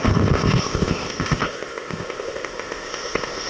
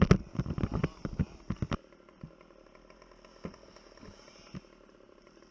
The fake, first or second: first